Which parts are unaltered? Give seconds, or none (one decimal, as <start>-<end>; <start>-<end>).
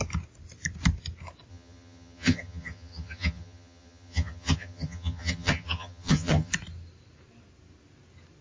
0.0-1.5; 6.5-8.4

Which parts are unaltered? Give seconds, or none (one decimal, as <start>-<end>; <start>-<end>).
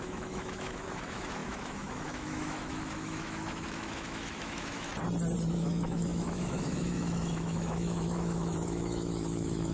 4.9-5.5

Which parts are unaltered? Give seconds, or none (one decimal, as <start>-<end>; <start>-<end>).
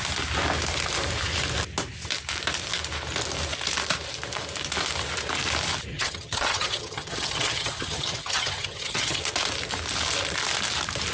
0.0-5.9; 9.2-11.1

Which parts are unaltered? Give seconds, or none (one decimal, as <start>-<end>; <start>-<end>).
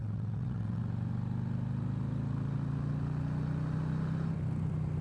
0.8-5.0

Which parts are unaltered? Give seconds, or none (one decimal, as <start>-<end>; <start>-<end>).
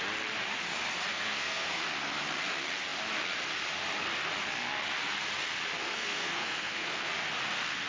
0.0-1.1; 1.8-5.8; 7.1-7.9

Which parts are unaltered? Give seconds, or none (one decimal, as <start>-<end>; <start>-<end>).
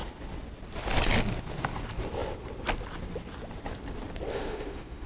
0.0-4.3